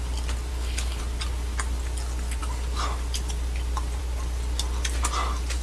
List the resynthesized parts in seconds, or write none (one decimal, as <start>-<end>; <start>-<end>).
0.5-1.0